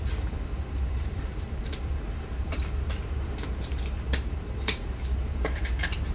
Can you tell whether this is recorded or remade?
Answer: remade